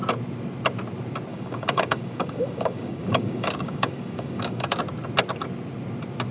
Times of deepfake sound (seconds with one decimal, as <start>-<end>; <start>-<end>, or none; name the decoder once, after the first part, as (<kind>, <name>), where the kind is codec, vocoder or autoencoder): 1.3-4.8 (codec, DAC)